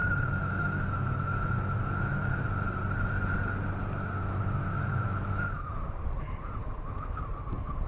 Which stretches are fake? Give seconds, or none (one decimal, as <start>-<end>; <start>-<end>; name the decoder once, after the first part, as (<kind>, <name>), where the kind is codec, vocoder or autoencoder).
0.0-1.5 (autoencoder, DAC-VAE); 4.2-5.8; 6.6-7.2